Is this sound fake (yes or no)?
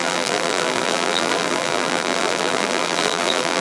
yes